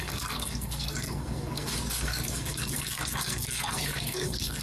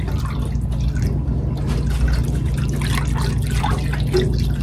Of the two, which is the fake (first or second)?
first